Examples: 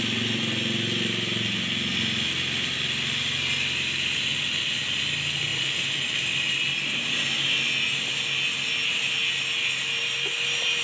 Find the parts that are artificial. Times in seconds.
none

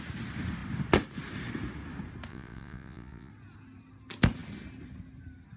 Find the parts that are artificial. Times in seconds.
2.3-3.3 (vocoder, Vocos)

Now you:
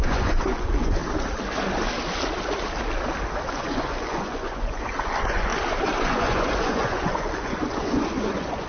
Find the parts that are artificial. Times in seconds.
0.0-1.0 (vocoder, Vocos); 3.5-5.5; 6.0-8.7